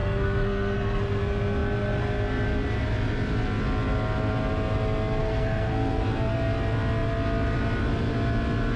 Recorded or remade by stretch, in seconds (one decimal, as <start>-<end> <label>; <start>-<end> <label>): 0.0-1.2 remade; 1.2-5.2 recorded; 5.2-6.0 remade; 6.0-8.8 recorded

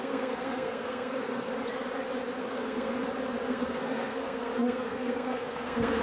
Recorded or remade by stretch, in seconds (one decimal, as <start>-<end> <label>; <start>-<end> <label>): 0.0-1.5 remade; 1.5-2.4 recorded; 2.4-2.9 remade; 2.9-3.5 recorded; 3.5-6.0 remade